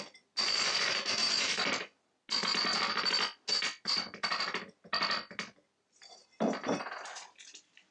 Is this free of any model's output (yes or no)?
yes